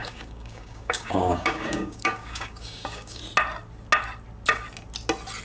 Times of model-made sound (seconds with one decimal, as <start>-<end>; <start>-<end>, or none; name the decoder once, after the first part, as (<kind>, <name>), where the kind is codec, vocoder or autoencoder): 0.0-3.2 (codec, DAC)